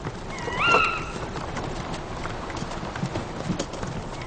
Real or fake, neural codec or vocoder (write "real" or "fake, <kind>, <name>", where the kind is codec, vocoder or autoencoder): real